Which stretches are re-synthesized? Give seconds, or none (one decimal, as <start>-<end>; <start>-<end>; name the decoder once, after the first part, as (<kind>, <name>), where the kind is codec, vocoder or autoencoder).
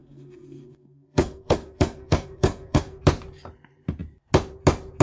0.0-3.0 (codec, SNAC)